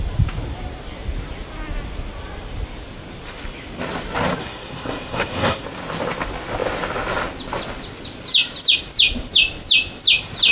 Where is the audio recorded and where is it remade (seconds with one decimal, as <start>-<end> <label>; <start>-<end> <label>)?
0.0-4.4 recorded; 4.4-5.6 remade; 5.6-10.5 recorded